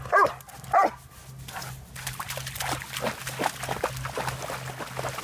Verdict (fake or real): real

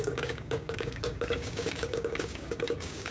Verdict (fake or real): fake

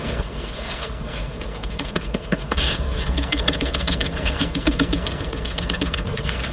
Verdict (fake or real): fake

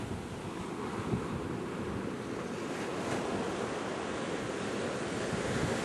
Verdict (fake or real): real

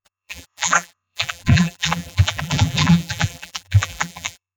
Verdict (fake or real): fake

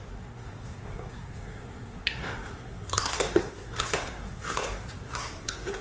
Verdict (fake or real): fake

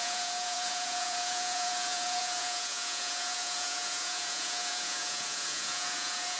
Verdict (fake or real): fake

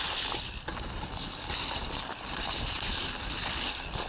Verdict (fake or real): real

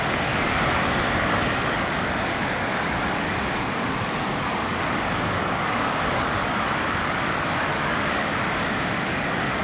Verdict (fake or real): fake